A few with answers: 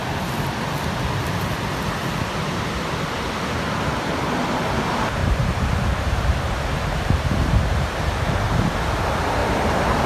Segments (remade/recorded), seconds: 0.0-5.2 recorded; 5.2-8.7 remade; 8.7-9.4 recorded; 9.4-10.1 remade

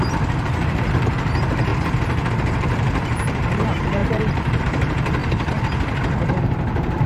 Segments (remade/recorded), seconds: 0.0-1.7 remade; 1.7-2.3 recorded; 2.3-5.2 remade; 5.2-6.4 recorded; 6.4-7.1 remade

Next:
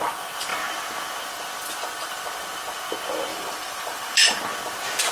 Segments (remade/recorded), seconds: 0.0-3.3 recorded; 3.3-4.4 remade; 4.4-5.1 recorded

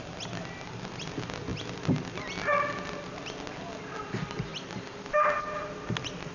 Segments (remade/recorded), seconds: 0.0-4.5 recorded; 4.5-5.3 remade; 5.3-6.3 recorded

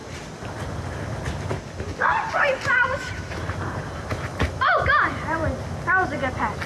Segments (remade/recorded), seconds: 0.0-2.6 recorded; 2.6-5.4 remade; 5.4-6.3 recorded; 6.3-6.7 remade